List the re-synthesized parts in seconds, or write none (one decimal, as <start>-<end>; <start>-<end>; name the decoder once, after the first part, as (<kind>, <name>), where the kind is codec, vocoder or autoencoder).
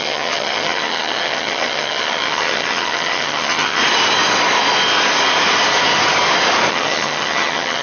0.0-3.8 (vocoder, HiFi-GAN); 6.7-7.8